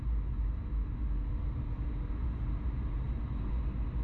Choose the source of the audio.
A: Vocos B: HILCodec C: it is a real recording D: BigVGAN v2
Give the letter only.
C